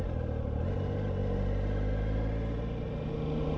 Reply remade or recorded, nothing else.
recorded